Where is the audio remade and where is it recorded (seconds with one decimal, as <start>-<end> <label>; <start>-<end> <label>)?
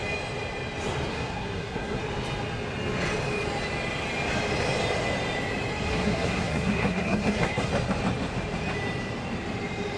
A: 0.0-1.1 recorded; 1.1-2.0 remade; 2.0-5.9 recorded; 5.9-7.7 remade; 7.7-10.0 recorded